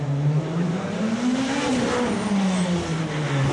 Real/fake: real